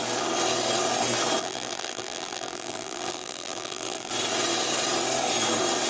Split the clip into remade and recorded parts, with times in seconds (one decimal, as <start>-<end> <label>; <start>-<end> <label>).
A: 0.0-1.4 recorded; 1.4-4.1 remade; 4.1-5.9 recorded